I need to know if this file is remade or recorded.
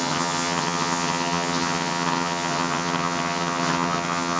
remade